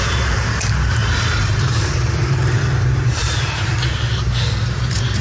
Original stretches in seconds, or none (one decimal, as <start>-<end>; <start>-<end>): none